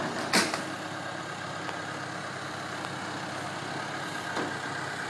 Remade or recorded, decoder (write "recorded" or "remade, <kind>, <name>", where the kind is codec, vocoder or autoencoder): recorded